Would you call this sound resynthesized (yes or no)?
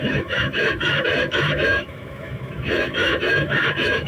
yes